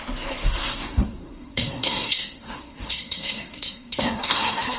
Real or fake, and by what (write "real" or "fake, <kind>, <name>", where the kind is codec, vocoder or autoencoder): fake, codec, SNAC